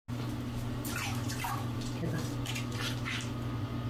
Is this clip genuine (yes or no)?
yes